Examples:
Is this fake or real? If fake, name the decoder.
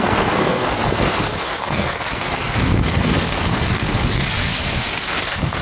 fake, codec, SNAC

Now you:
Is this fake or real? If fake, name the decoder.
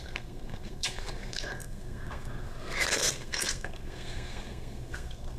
fake, codec, SNAC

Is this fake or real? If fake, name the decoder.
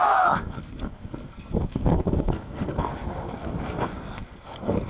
fake, codec, SNAC